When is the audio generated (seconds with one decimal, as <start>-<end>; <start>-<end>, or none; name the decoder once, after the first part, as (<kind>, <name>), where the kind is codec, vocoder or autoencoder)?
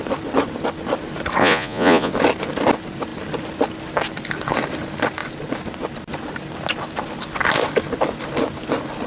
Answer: 1.4-2.1 (vocoder, Vocos)